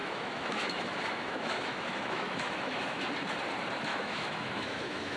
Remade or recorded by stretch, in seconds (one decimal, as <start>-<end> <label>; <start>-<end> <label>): 0.0-3.1 remade; 3.1-3.9 recorded; 3.9-5.2 remade